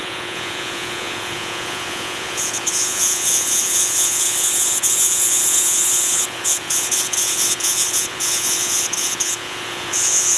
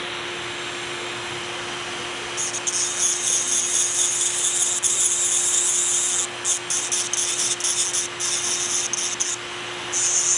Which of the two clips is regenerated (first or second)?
first